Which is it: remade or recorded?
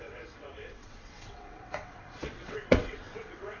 remade